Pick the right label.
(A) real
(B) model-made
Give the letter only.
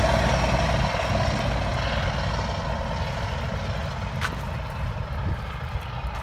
A